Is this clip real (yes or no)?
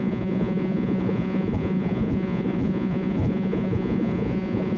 no